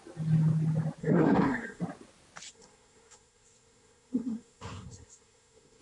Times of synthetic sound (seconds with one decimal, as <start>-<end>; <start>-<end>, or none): 1.0-1.8; 2.5-5.8